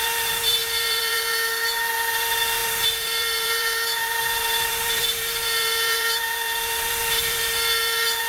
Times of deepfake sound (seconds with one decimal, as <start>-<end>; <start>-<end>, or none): 0.0-8.3